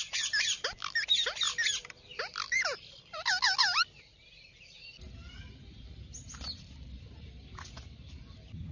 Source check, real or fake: fake